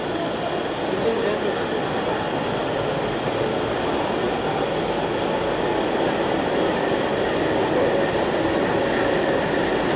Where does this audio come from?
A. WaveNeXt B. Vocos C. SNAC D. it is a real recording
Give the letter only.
D